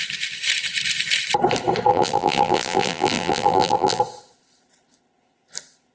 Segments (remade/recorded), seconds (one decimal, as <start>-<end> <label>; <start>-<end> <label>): 0.0-1.9 recorded; 1.9-4.0 remade; 4.0-5.9 recorded